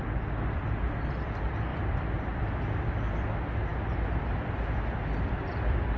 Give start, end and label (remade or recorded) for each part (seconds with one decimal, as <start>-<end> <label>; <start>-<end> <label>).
0.0-6.0 recorded